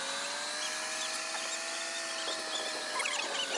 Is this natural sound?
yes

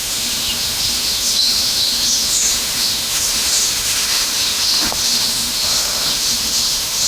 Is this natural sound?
no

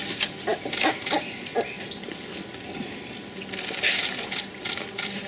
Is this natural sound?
yes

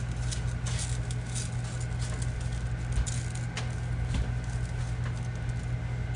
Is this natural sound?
yes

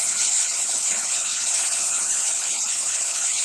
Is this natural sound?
no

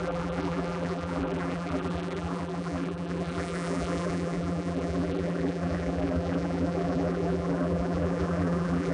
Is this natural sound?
no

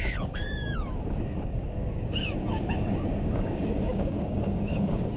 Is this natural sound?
no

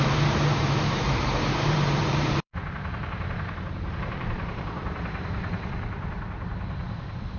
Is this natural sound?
no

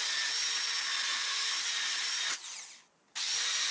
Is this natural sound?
yes